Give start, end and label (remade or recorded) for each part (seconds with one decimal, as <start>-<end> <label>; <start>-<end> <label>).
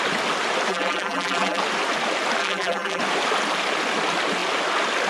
0.0-0.7 recorded; 0.7-1.6 remade; 1.6-2.4 recorded; 2.4-3.0 remade; 3.0-5.1 recorded